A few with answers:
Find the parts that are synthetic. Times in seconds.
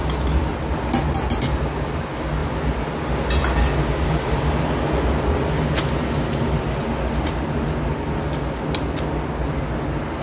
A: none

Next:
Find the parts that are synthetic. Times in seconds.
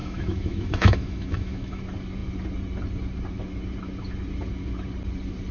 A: 0.0-1.8 (autoencoder, DAC-VAE)